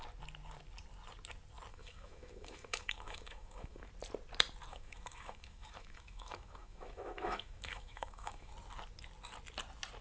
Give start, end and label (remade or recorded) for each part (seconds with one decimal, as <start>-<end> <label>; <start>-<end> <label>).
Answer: 0.0-1.7 recorded; 1.7-3.9 remade; 3.9-4.7 recorded; 4.7-8.5 remade; 8.5-10.0 recorded